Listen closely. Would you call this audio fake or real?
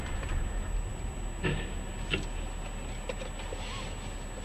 real